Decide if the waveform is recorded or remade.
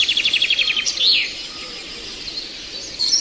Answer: recorded